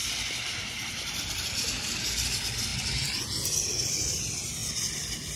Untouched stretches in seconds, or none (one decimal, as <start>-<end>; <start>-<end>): 0.0-5.4